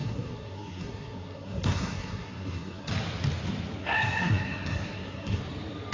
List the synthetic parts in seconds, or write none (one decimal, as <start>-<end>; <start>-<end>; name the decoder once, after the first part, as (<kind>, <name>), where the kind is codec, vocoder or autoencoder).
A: 0.0-2.9 (codec, SNAC); 3.8-5.4